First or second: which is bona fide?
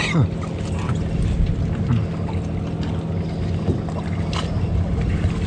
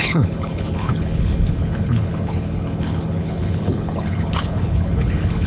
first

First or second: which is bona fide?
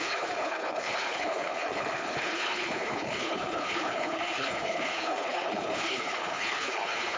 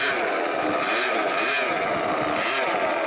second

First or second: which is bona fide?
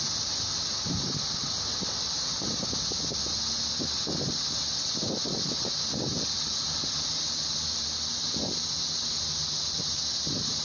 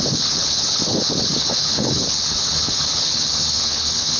first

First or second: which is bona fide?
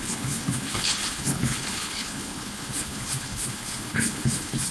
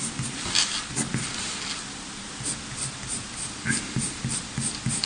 second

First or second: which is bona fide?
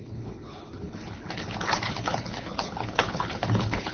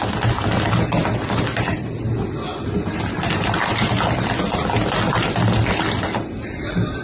second